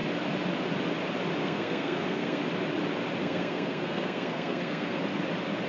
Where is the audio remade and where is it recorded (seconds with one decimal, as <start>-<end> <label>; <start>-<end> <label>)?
0.0-1.4 recorded; 1.4-2.4 remade; 2.4-3.2 recorded; 3.2-5.0 remade; 5.0-5.7 recorded